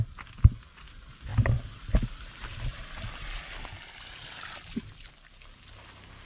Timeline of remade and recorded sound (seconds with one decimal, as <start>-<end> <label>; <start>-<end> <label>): 0.0-6.3 recorded